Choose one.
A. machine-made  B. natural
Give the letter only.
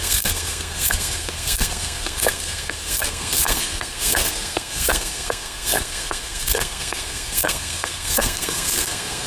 A